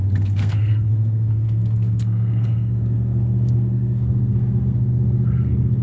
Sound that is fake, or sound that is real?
fake